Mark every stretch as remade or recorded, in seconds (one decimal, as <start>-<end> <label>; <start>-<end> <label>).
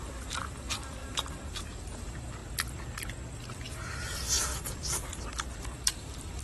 0.0-2.4 remade; 2.4-4.8 recorded; 4.8-6.4 remade